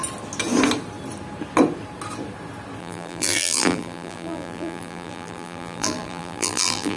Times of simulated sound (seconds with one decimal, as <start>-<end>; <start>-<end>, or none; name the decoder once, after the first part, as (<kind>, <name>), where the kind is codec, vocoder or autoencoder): 2.8-7.0 (vocoder, BigVGAN v2)